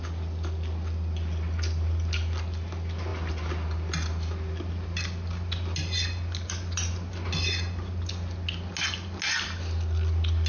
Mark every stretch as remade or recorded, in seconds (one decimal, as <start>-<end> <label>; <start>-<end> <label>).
0.0-10.5 recorded